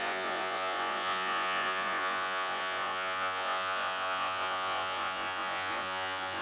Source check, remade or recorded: remade